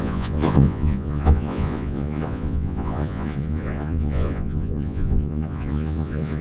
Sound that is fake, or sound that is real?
fake